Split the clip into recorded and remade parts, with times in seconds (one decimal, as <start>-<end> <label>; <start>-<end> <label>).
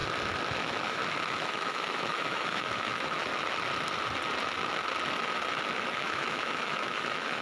0.0-0.6 recorded; 0.6-1.0 remade; 1.0-1.5 recorded; 1.5-3.3 remade; 3.3-5.9 recorded; 5.9-7.4 remade